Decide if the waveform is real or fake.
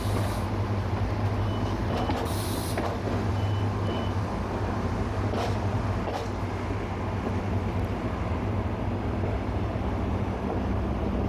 real